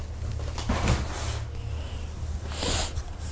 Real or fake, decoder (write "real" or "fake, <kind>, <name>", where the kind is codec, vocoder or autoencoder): real